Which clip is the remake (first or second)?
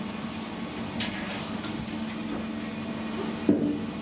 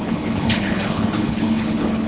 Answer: second